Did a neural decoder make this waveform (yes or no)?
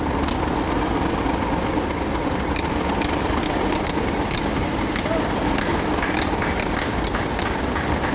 no